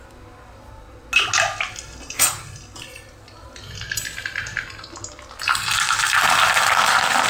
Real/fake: real